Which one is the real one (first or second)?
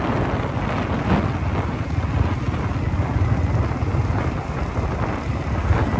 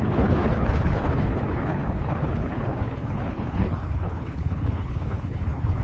first